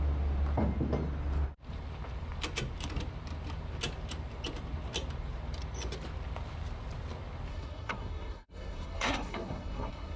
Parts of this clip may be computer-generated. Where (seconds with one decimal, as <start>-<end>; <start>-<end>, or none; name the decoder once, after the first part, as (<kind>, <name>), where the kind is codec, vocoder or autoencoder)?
7.5-10.2 (codec, SNAC)